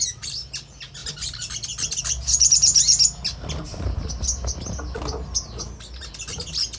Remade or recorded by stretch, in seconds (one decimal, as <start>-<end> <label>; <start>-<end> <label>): 0.0-6.8 recorded